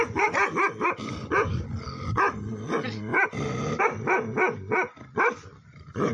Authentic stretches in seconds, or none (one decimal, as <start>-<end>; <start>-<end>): 0.0-6.1